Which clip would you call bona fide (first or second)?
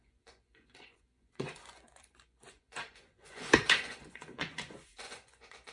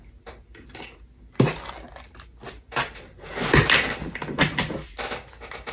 second